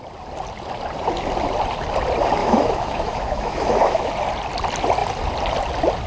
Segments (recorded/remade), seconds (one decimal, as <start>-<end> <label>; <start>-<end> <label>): 0.0-2.4 recorded; 2.4-4.1 remade; 4.1-6.1 recorded